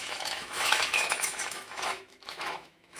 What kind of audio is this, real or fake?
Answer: fake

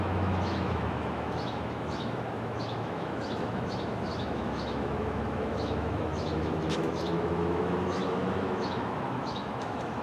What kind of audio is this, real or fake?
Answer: fake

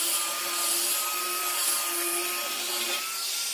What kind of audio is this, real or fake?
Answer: real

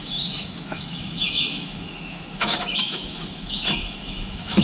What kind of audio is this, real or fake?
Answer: fake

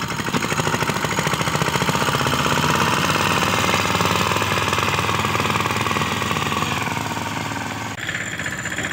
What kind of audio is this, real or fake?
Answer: real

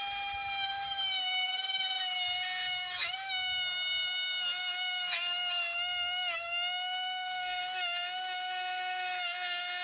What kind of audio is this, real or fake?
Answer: fake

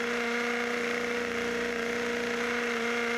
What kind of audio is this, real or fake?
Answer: real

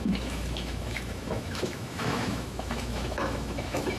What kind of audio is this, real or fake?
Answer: fake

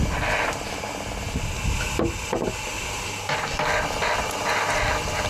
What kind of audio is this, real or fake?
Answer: real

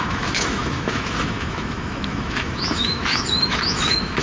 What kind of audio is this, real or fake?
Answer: fake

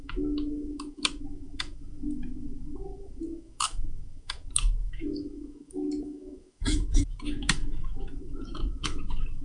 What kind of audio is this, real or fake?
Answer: fake